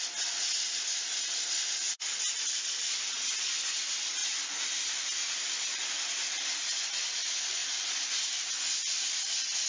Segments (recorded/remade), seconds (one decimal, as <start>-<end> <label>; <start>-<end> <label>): 0.0-9.7 recorded